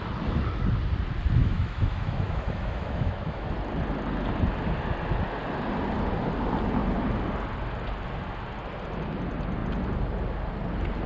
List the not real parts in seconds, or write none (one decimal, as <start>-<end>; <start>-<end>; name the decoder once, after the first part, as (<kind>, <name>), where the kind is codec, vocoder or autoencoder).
1.4-3.5 (autoencoder, DAC-VAE)

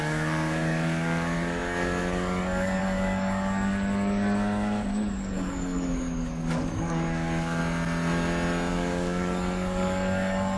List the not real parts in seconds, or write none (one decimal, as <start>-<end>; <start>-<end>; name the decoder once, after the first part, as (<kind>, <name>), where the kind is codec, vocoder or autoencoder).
0.0-7.6 (codec, DAC); 8.7-10.6

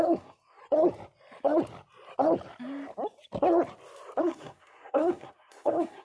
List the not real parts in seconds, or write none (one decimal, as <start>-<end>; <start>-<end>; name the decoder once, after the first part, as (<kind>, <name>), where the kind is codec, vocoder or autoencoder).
0.0-0.6 (codec, SNAC); 4.2-6.0

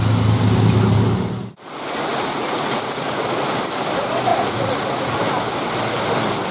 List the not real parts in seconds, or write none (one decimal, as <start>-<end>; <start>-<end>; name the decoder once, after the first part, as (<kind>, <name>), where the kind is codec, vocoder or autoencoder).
2.1-3.4 (vocoder, Vocos); 4.3-5.2

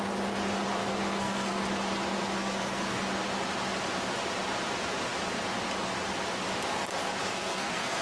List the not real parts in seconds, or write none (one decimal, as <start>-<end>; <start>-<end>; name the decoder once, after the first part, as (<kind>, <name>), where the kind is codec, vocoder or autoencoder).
0.8-1.6 (codec, SNAC); 2.4-3.0; 7.2-8.0